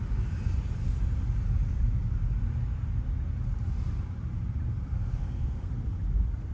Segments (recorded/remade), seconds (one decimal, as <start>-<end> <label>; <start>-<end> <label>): 0.0-5.2 recorded; 5.2-5.7 remade; 5.7-6.5 recorded